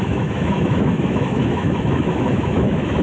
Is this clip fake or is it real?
fake